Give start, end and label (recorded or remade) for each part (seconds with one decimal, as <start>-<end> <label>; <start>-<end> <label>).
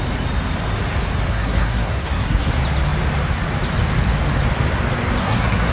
0.0-1.3 recorded; 1.3-2.5 remade; 2.5-5.2 recorded; 5.2-5.7 remade